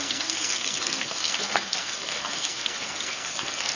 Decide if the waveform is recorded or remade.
remade